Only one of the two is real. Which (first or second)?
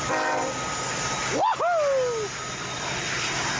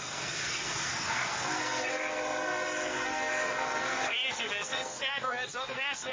first